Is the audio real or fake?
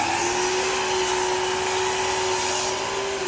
real